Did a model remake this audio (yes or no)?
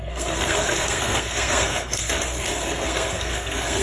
yes